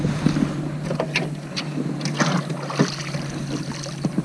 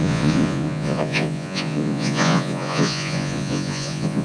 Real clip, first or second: first